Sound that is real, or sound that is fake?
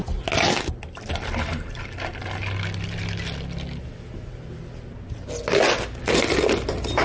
real